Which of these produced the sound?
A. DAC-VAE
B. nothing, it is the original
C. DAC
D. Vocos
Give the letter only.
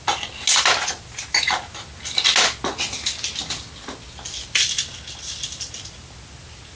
B